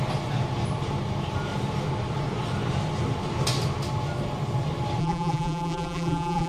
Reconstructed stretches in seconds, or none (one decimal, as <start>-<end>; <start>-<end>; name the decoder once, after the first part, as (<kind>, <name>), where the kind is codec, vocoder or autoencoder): 5.0-6.5 (vocoder, BigVGAN v2)